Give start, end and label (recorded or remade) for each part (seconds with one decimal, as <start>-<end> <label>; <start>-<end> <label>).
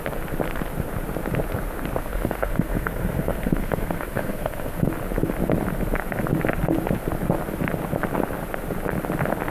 0.0-2.0 recorded; 2.0-4.9 remade; 4.9-9.5 recorded